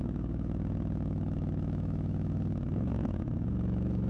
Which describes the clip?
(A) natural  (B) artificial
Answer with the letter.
B